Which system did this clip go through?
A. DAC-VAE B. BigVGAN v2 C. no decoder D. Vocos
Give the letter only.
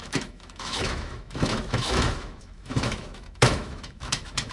A